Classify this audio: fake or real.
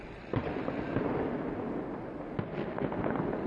real